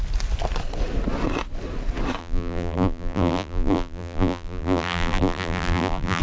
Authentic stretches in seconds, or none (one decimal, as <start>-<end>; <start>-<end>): 0.0-2.2